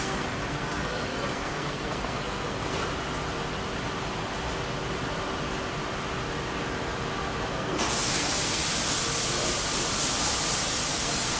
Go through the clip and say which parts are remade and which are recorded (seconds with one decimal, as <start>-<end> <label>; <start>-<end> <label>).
0.0-2.8 remade; 2.8-7.5 recorded; 7.5-8.6 remade; 8.6-10.9 recorded; 10.9-11.4 remade